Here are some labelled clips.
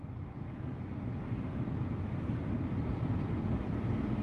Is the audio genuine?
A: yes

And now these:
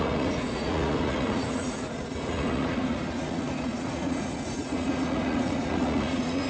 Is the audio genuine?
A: no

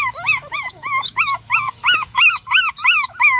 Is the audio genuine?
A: no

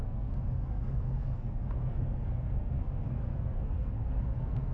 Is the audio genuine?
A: no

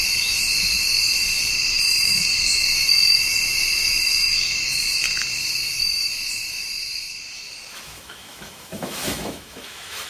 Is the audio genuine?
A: no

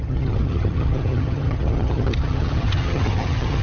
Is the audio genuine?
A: no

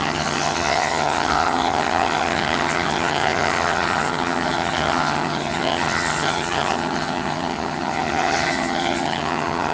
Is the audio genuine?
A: no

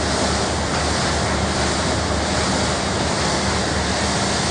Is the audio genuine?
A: yes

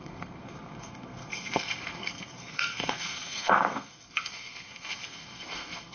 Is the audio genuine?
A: no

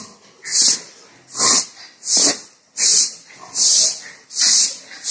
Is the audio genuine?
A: yes